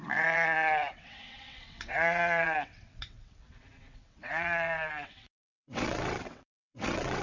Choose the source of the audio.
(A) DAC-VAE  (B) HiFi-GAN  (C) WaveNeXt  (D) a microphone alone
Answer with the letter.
C